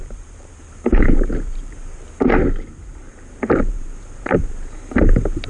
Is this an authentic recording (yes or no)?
no